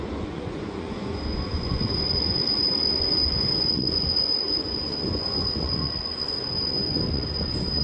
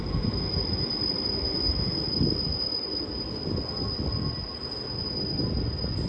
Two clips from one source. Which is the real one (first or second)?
second